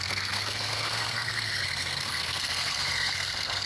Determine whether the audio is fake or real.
fake